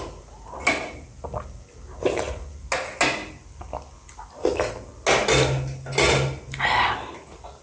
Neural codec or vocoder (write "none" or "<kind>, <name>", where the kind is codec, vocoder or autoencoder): none